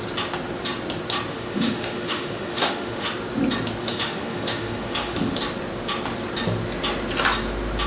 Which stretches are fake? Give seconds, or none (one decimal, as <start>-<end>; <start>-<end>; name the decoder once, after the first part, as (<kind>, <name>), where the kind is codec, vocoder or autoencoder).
1.3-3.1 (autoencoder, DAC-VAE); 3.8-5.4